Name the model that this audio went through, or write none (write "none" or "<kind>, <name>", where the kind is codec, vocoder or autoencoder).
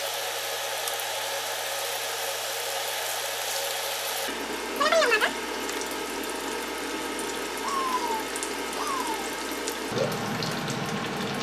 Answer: none